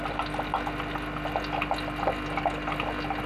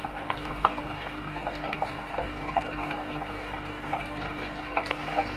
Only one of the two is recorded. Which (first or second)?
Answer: first